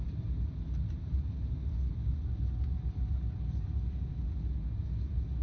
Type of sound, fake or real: real